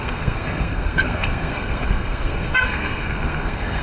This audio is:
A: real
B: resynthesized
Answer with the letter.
B